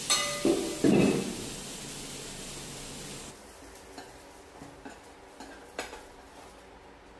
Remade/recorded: recorded